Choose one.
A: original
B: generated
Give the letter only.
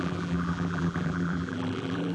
B